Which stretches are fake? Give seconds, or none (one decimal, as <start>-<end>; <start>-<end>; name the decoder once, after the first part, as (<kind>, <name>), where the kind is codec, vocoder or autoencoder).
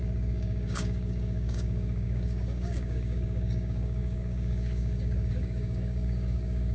0.0-6.7 (codec, DAC)